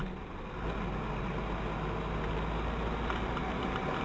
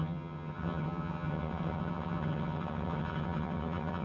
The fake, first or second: second